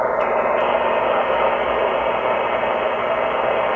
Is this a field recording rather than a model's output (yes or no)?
yes